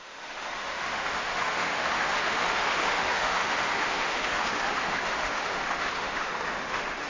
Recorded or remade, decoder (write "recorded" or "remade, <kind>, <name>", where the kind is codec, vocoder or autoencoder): remade, autoencoder, DAC-VAE